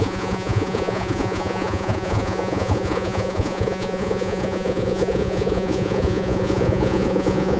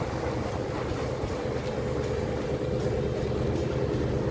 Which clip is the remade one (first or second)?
first